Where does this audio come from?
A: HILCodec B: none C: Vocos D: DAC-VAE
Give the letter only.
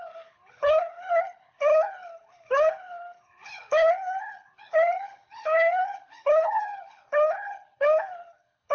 A